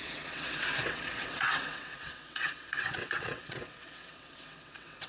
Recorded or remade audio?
remade